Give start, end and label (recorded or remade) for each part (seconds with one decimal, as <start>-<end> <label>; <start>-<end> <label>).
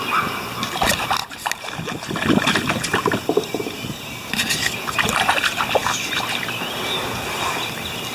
0.0-8.1 recorded